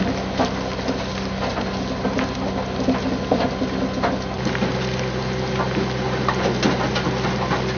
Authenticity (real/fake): real